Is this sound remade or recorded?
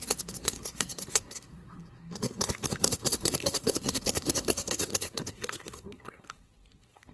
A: remade